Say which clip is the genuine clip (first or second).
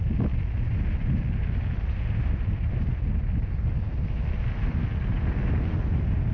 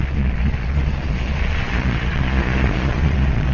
first